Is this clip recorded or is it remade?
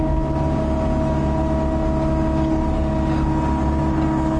recorded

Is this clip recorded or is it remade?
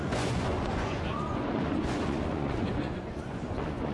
remade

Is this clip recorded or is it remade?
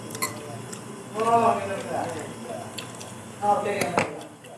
recorded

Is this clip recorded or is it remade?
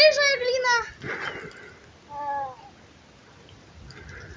recorded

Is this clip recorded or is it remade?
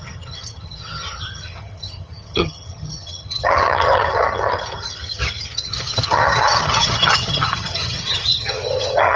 remade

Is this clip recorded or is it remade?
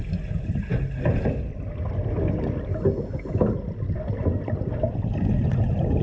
recorded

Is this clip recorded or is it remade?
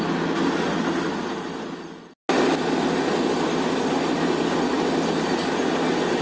recorded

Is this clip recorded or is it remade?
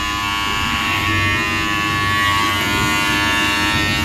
recorded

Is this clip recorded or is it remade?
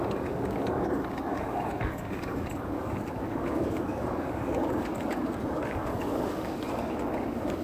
remade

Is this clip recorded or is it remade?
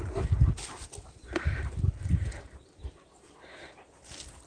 recorded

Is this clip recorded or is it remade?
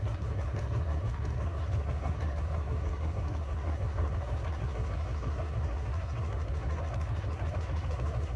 remade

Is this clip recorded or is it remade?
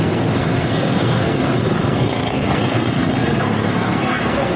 remade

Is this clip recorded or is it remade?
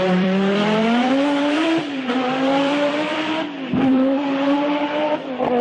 remade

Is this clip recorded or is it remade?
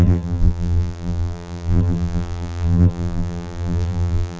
remade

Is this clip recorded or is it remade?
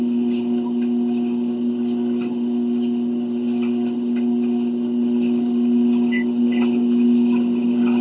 recorded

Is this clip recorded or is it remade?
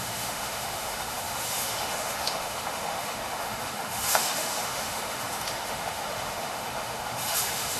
remade